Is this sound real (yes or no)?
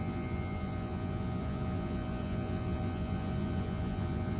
no